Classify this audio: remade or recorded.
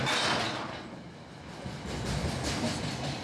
recorded